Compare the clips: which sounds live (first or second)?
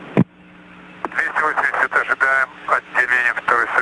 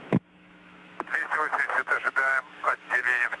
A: first